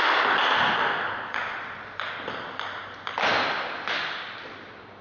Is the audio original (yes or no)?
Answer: yes